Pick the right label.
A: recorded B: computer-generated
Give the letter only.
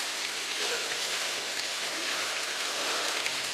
B